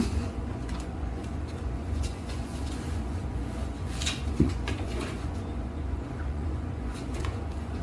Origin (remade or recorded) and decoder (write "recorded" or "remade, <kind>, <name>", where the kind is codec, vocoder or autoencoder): remade, vocoder, Vocos